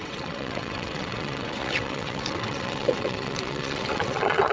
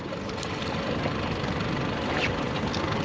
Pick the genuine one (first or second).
second